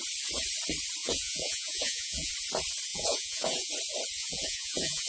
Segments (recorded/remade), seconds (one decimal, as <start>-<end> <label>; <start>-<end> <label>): 0.0-1.0 recorded; 1.0-2.3 remade; 2.3-2.9 recorded; 2.9-3.7 remade; 3.7-4.2 recorded; 4.2-5.1 remade